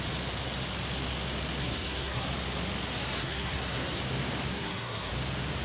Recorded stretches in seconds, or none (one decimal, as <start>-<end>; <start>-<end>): 0.0-1.6; 2.3-3.2; 4.0-4.5; 5.1-5.6